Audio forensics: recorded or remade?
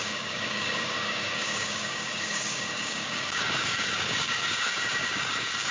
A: remade